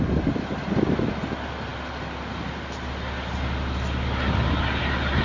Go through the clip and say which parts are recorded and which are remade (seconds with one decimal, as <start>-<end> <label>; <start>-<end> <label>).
0.0-5.2 recorded